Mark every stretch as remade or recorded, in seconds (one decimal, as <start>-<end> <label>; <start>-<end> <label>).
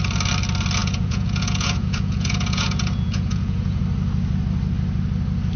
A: 0.0-0.8 recorded; 0.8-3.8 remade; 3.8-5.6 recorded